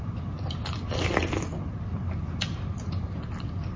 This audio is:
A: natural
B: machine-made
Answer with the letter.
A